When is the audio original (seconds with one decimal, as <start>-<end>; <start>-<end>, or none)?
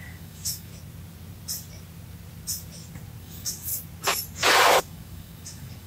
0.7-3.2; 3.7-4.8